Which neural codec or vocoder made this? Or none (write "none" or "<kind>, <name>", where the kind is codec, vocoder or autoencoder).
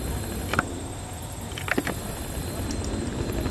none